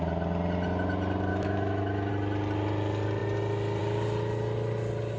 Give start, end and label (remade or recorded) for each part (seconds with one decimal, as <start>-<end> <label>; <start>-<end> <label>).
0.0-1.3 recorded; 1.3-2.1 remade; 2.1-5.2 recorded